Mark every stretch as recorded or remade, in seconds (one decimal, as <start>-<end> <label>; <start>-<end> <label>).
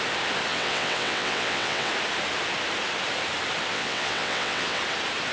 0.0-0.5 recorded; 0.5-1.9 remade; 1.9-3.7 recorded; 3.7-4.8 remade; 4.8-5.3 recorded